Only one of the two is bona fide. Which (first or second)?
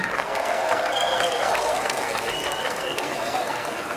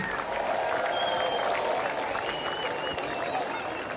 second